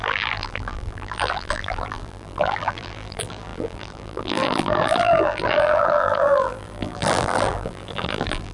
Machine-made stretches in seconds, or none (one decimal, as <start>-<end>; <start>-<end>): 0.0-8.5